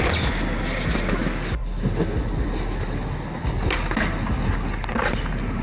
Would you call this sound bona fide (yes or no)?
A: yes